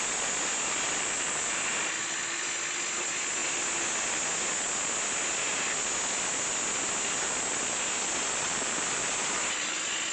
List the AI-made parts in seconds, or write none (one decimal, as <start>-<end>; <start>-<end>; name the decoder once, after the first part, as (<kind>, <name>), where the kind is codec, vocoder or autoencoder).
none